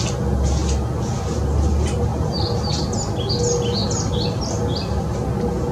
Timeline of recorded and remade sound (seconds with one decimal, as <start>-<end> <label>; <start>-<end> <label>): 0.0-5.7 recorded